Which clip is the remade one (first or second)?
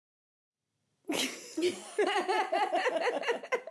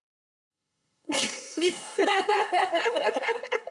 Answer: second